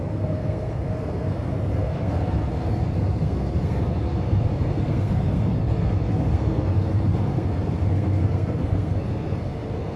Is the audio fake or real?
fake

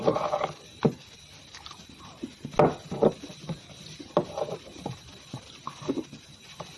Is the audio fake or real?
real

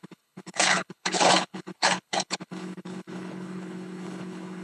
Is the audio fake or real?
fake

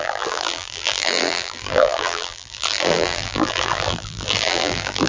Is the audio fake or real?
fake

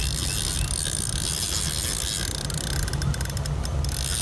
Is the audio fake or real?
real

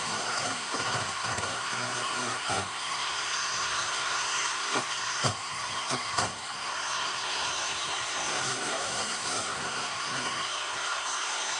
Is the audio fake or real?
fake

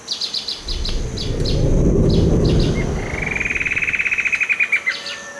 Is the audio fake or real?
real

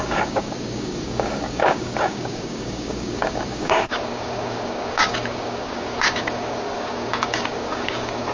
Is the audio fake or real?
fake